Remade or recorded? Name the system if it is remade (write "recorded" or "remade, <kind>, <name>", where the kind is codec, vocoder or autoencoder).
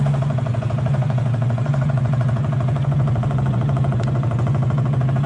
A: remade, vocoder, Vocos